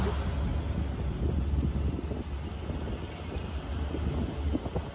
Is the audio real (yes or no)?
yes